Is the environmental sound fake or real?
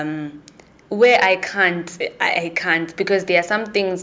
real